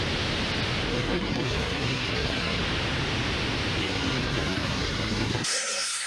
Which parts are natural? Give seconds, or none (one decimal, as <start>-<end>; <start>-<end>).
0.0-0.9; 2.6-3.8

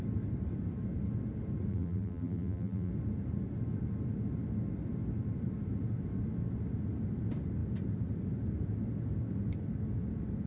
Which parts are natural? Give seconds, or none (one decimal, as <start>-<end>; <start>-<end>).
0.0-1.7; 2.9-10.5